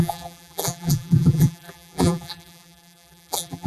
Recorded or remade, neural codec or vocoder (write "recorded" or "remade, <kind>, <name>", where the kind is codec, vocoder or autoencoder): remade, vocoder, BigVGAN v2